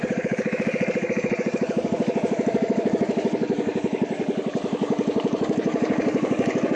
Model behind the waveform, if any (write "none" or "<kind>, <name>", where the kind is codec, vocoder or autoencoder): codec, DAC